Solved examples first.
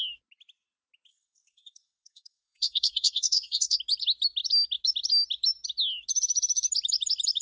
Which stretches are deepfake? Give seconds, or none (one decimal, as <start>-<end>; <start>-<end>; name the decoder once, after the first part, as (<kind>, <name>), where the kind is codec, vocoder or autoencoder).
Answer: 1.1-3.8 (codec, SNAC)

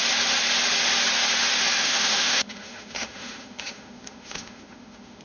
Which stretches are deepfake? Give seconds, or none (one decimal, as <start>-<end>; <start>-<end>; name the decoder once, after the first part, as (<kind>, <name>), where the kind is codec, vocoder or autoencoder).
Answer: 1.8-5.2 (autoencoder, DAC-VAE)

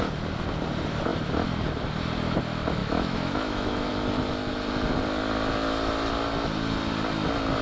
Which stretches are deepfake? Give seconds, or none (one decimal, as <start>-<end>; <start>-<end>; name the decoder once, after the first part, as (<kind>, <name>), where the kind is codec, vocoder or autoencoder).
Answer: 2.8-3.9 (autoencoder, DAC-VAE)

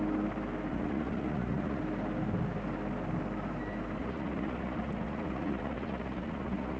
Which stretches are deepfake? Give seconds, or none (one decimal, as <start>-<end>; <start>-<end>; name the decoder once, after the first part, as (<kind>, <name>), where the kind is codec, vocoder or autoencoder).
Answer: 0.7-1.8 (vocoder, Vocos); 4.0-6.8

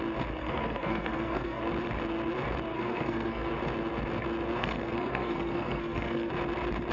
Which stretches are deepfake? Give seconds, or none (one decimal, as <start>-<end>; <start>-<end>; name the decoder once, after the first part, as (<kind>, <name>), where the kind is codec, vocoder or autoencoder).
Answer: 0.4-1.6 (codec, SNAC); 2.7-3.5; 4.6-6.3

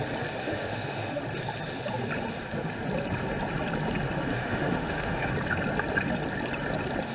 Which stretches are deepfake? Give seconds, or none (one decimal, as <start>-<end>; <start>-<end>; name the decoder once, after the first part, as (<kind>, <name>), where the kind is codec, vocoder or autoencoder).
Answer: 0.4-1.2 (autoencoder, DAC-VAE); 4.3-5.3